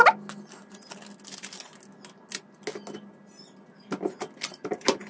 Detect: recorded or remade recorded